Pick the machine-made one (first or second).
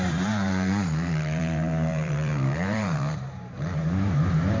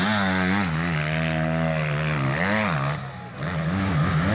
first